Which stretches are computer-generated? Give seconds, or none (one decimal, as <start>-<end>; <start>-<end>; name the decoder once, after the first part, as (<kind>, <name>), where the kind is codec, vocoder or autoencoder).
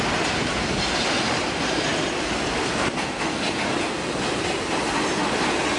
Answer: none